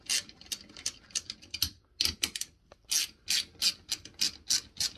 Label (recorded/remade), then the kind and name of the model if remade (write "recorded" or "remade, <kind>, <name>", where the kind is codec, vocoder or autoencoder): recorded